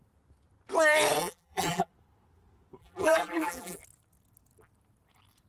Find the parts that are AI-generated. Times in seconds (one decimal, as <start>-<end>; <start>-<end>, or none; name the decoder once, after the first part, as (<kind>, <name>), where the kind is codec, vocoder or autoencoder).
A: 1.2-1.9 (vocoder, BigVGAN v2); 2.8-3.8